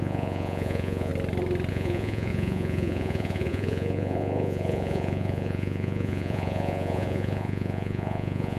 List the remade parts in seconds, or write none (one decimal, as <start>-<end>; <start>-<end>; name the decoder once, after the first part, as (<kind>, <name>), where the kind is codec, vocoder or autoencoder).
0.0-1.1 (vocoder, Vocos); 1.7-8.6